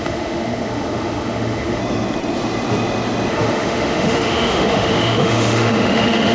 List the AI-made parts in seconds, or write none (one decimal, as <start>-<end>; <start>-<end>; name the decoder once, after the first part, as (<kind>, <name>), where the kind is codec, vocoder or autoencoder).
0.0-1.8 (autoencoder, DAC-VAE); 3.3-6.3